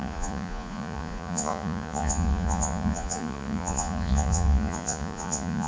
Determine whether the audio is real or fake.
fake